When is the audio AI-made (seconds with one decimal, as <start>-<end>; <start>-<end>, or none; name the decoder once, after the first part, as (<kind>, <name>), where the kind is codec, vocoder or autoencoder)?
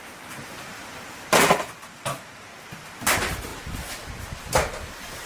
0.0-5.3 (vocoder, BigVGAN v2)